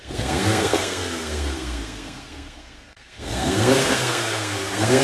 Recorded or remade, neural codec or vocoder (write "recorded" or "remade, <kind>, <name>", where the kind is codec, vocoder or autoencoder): remade, codec, SNAC